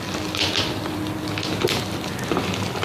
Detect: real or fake real